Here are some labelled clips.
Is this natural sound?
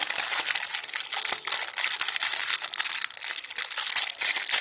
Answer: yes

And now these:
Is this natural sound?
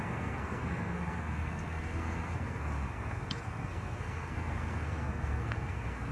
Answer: no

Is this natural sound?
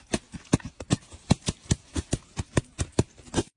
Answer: yes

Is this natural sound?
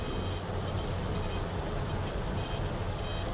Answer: yes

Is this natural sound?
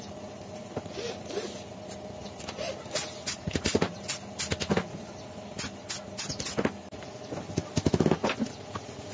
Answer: yes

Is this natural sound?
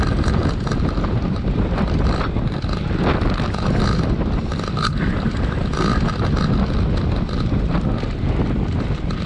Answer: yes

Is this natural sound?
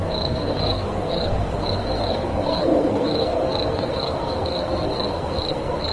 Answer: no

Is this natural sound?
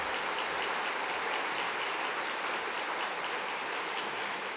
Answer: yes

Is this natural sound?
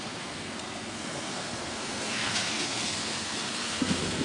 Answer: no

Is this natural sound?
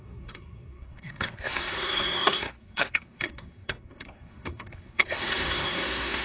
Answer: no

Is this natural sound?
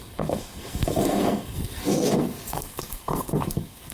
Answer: no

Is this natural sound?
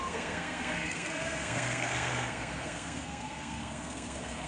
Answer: no